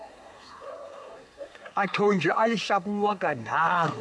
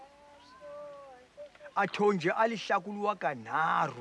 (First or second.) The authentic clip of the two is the second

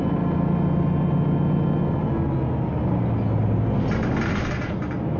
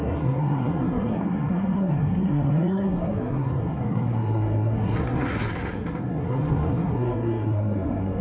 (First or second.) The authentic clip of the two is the first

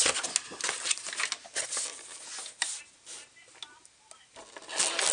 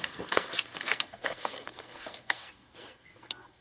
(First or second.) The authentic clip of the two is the first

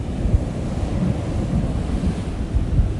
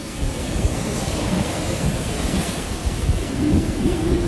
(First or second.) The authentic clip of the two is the first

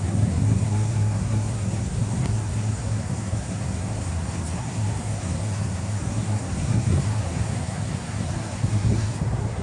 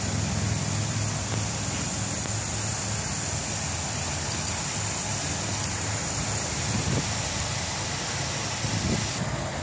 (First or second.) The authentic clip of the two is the second